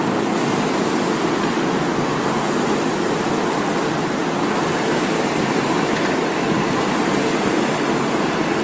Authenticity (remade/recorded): recorded